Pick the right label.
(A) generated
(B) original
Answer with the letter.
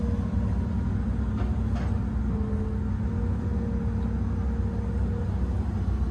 B